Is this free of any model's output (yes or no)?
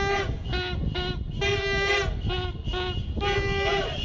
yes